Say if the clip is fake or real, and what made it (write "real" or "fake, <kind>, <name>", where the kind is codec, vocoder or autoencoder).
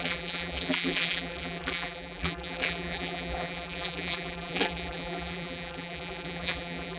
fake, vocoder, BigVGAN v2